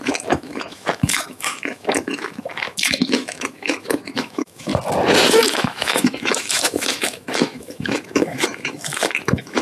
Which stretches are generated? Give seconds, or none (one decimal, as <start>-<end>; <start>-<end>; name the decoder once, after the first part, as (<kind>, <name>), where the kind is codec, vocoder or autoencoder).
0.0-4.7 (autoencoder, DAC-VAE); 5.5-9.6